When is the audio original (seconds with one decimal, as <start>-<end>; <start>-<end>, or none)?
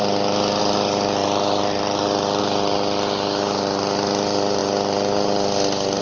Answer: 0.0-6.0